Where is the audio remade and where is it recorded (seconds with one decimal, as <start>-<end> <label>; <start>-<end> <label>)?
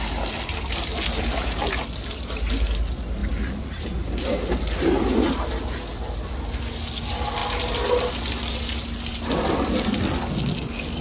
0.0-3.2 recorded; 3.2-5.7 remade; 5.7-7.4 recorded; 7.4-8.1 remade; 8.1-11.0 recorded